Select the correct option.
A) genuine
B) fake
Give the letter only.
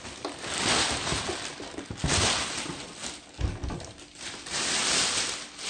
A